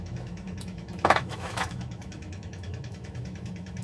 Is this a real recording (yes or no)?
no